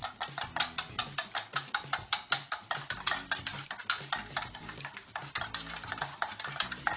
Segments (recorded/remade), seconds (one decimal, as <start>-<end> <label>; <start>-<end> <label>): 0.0-7.0 recorded